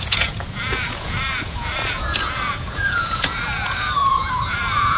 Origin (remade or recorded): remade